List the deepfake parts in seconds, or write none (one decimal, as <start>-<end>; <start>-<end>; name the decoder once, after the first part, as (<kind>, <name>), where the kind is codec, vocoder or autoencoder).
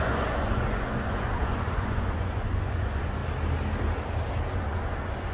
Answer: 0.0-3.2 (vocoder, Vocos); 4.5-5.3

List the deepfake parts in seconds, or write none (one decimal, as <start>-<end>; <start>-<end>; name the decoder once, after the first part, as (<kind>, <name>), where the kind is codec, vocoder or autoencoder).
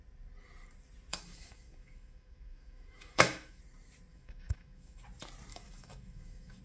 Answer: 1.1-3.6 (autoencoder, DAC-VAE); 4.1-5.0; 5.5-6.6